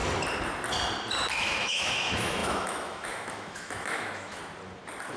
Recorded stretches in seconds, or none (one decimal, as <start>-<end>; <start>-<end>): 0.0-1.4; 4.4-5.2